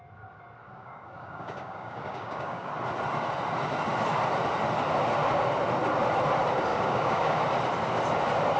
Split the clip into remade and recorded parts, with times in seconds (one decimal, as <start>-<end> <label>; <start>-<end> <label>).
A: 0.0-0.6 recorded; 0.6-2.7 remade; 2.7-6.7 recorded; 6.7-7.4 remade; 7.4-8.6 recorded